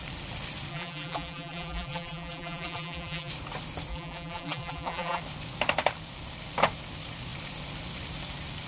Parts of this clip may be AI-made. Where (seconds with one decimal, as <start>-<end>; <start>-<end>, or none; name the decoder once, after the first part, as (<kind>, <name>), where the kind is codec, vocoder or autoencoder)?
0.7-3.3 (vocoder, BigVGAN v2); 3.9-5.2